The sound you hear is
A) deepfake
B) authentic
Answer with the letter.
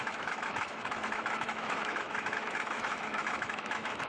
A